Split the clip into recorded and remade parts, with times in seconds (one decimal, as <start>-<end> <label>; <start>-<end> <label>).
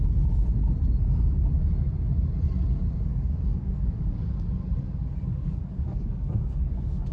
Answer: 0.0-3.1 recorded; 3.1-4.5 remade; 4.5-5.3 recorded; 5.3-7.1 remade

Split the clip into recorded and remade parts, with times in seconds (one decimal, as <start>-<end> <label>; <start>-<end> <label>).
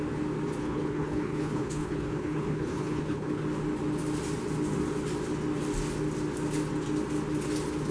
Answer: 0.0-0.6 recorded; 0.6-3.4 remade; 3.4-7.9 recorded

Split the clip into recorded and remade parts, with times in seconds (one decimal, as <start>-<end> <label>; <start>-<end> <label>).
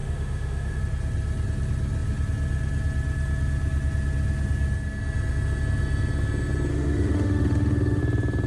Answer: 0.0-0.8 remade; 0.8-6.7 recorded; 6.7-8.0 remade; 8.0-8.5 recorded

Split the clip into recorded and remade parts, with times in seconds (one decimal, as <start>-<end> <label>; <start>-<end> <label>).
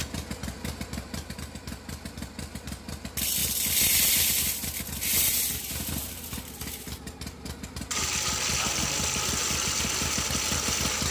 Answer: 0.0-11.1 recorded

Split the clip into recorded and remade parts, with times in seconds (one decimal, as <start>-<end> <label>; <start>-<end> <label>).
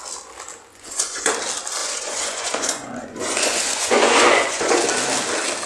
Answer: 0.0-0.7 recorded; 0.7-1.3 remade; 1.3-1.8 recorded; 1.8-4.8 remade; 4.8-5.7 recorded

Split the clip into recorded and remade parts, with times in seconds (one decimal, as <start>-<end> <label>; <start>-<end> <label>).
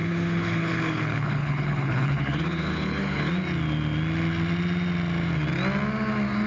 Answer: 0.0-3.3 remade; 3.3-6.5 recorded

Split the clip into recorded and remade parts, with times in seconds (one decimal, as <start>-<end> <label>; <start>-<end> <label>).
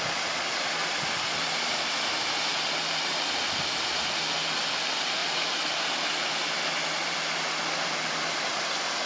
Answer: 0.0-9.1 recorded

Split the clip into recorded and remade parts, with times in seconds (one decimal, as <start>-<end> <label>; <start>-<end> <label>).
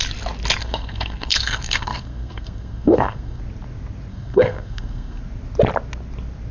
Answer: 0.0-0.6 recorded; 0.6-3.4 remade; 3.4-4.1 recorded; 4.1-5.2 remade; 5.2-6.5 recorded